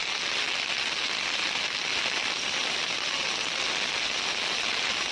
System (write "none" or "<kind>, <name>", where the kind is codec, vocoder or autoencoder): none